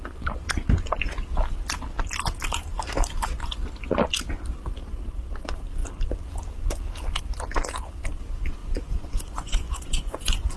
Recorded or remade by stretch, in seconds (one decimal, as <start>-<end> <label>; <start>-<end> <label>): 0.0-8.6 recorded; 8.6-10.6 remade

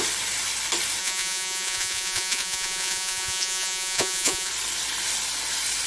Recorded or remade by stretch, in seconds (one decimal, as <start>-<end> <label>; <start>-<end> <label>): 0.0-1.0 recorded; 1.0-4.5 remade; 4.5-5.9 recorded

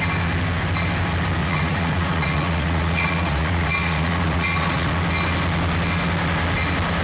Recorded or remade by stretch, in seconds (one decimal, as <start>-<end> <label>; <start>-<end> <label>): 0.0-1.4 recorded; 1.4-4.9 remade; 4.9-7.0 recorded

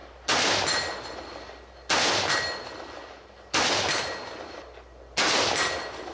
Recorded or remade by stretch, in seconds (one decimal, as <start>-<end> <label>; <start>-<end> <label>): 0.0-6.1 recorded

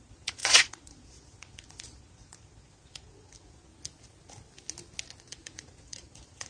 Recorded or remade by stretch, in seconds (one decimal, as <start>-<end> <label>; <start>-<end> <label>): 0.0-3.7 remade; 3.7-5.2 recorded; 5.2-6.5 remade

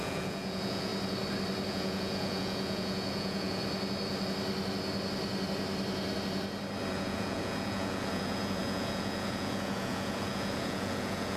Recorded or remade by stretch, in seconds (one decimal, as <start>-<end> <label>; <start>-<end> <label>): 0.0-0.9 remade; 0.9-1.7 recorded; 1.7-3.6 remade; 3.6-6.9 recorded; 6.9-11.4 remade

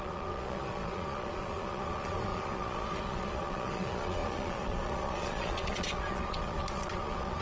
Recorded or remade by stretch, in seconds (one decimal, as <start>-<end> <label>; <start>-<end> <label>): 0.0-7.4 remade